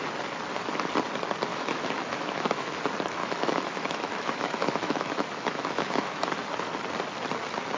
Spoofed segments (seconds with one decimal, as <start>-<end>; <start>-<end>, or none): 1.5-2.8; 3.2-6.3